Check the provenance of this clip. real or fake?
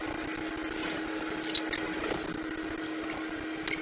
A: real